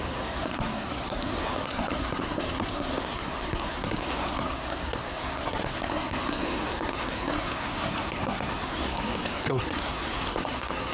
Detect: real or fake fake